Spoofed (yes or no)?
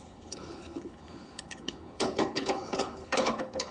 yes